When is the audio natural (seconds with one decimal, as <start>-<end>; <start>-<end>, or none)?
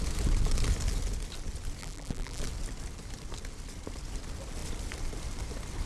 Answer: 0.0-1.8; 2.4-5.9